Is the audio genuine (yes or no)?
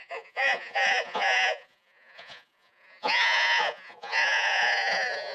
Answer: no